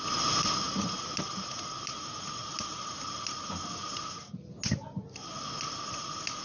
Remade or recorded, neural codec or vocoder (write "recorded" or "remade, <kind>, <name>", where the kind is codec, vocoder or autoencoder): recorded